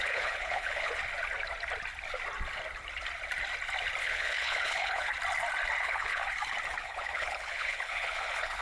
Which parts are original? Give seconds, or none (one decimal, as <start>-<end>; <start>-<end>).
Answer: 1.0-4.0; 5.1-5.8; 6.2-6.8